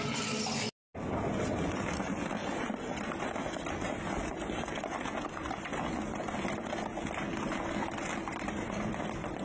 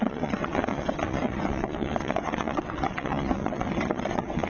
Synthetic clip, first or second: second